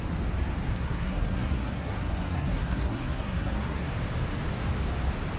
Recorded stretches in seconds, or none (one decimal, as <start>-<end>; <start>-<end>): 0.0-0.7; 3.9-5.4